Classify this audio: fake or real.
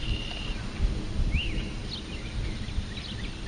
real